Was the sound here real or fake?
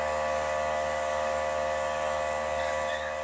fake